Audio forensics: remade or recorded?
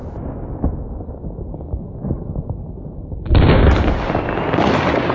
recorded